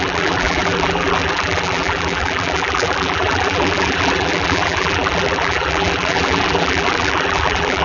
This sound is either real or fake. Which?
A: fake